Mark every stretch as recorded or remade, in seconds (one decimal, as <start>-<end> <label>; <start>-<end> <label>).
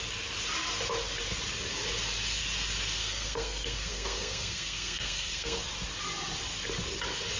0.0-3.0 recorded; 3.0-5.6 remade; 5.6-7.4 recorded